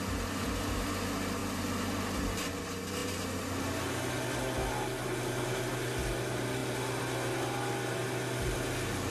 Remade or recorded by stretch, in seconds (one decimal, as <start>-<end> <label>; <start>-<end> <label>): 0.0-9.1 recorded